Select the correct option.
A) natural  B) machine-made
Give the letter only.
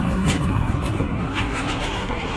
B